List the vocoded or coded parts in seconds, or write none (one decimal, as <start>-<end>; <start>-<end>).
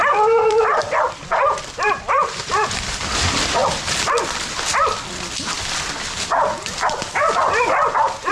0.0-2.5